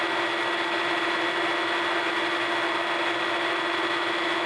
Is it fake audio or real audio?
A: real